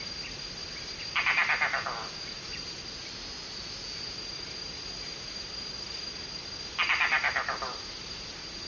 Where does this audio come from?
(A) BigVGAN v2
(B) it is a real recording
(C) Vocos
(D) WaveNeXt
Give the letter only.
B